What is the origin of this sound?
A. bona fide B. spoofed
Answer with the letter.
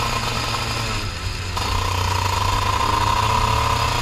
A